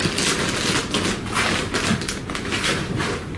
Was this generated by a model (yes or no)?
no